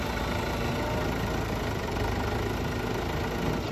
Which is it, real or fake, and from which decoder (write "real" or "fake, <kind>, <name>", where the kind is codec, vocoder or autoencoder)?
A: real